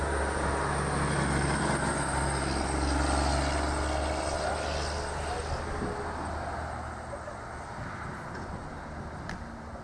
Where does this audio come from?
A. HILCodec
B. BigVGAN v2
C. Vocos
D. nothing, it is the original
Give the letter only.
D